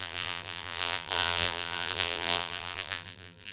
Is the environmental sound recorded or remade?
remade